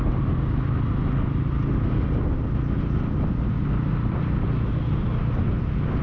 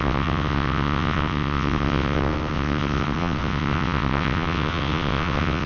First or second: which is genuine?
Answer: first